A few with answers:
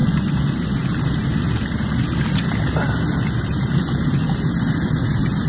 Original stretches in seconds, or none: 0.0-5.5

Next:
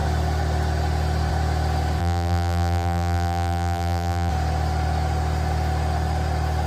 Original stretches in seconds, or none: 0.0-2.0; 4.3-6.7

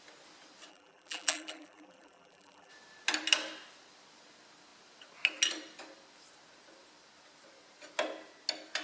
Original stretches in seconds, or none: 0.0-0.7; 2.7-8.8